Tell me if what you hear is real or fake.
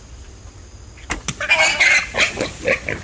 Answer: real